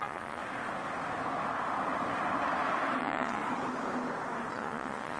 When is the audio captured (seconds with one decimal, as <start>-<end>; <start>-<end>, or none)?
0.4-3.0; 3.4-4.5